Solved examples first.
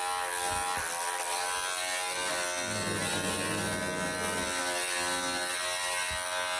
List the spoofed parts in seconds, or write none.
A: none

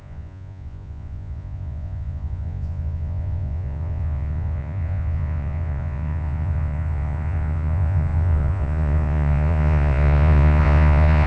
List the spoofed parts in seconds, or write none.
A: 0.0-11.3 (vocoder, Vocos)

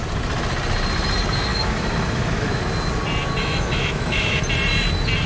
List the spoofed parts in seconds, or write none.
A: 1.5-2.6 (autoencoder, DAC-VAE); 3.4-4.4